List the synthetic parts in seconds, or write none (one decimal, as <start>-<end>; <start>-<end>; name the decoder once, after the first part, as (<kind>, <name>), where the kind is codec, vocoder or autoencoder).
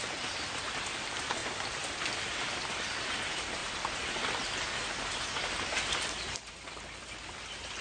none